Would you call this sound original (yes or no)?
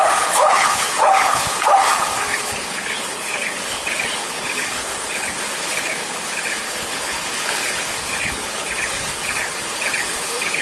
no